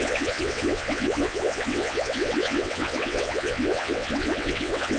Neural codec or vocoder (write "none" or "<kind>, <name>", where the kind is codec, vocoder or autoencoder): vocoder, WaveNeXt